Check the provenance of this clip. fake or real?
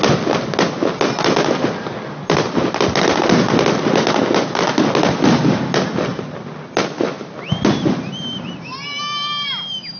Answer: real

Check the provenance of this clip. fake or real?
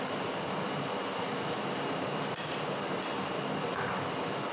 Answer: real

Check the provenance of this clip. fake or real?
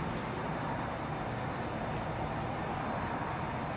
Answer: real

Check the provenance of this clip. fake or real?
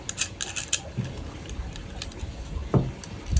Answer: real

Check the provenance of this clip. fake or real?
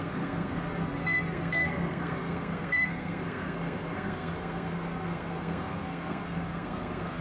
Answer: fake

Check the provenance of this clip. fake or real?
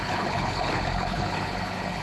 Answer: fake